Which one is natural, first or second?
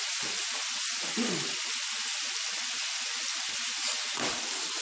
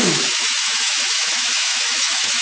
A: first